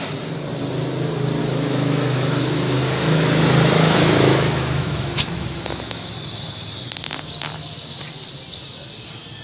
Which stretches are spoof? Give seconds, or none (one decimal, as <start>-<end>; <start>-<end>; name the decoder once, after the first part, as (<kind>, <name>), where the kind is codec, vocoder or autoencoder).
1.4-6.1 (autoencoder, DAC-VAE)